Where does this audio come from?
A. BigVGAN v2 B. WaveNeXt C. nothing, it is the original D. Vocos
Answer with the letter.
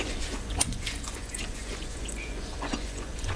D